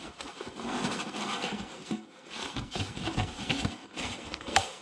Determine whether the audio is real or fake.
fake